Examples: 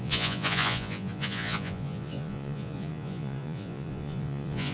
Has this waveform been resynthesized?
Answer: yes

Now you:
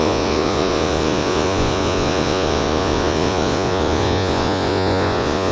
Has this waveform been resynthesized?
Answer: yes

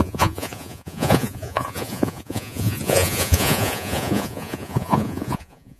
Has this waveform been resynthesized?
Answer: yes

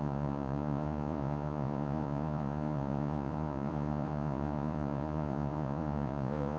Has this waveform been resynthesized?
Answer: yes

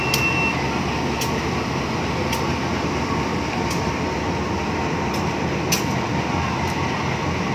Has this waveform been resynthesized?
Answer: no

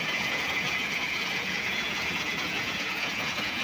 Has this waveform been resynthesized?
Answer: yes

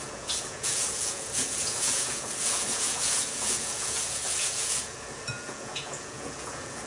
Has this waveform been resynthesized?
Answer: yes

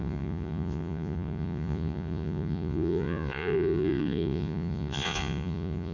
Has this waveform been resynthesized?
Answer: yes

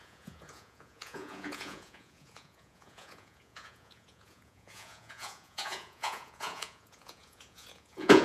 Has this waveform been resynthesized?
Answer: yes